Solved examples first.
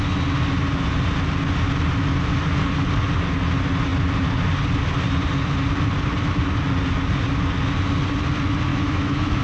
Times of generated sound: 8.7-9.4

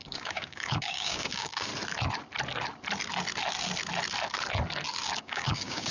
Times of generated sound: 0.0-1.7; 5.2-5.9